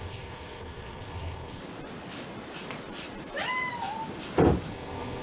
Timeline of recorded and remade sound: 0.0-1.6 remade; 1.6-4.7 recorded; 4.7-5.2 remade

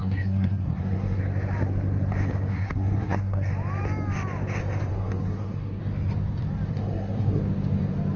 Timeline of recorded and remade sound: 0.0-1.2 remade; 1.2-2.5 recorded; 2.5-3.5 remade; 3.5-4.9 recorded; 4.9-5.8 remade; 5.8-6.7 recorded; 6.7-7.4 remade; 7.4-8.2 recorded

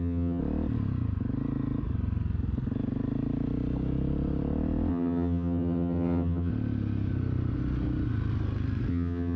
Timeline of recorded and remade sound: 0.0-0.4 remade; 0.4-4.9 recorded; 4.9-6.5 remade; 6.5-8.9 recorded; 8.9-9.4 remade

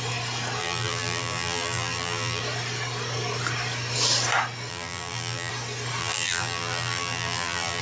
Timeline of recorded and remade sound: 0.0-0.6 recorded; 0.6-2.4 remade; 2.4-4.7 recorded; 4.7-5.5 remade; 5.5-6.0 recorded; 6.0-7.8 remade

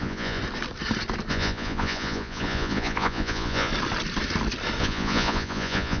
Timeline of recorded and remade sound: 0.0-0.4 remade; 0.4-1.3 recorded; 1.3-3.7 remade; 3.7-4.8 recorded; 4.8-6.0 remade

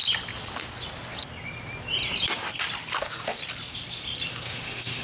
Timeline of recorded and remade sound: 0.0-3.0 recorded; 3.0-3.4 remade; 3.4-4.3 recorded; 4.3-5.0 remade

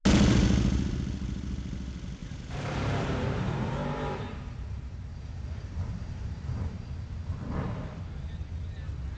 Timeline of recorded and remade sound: 0.0-2.2 recorded; 2.2-6.8 remade; 6.8-9.2 recorded